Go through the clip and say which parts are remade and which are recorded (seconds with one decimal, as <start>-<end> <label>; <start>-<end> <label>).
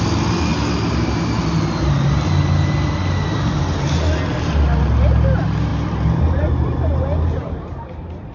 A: 0.0-0.5 recorded; 0.5-1.4 remade; 1.4-8.3 recorded